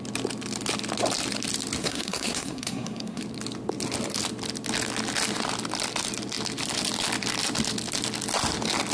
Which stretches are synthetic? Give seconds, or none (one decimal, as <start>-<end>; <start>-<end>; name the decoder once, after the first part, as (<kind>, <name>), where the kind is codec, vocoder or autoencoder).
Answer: 1.8-3.2 (codec, SNAC)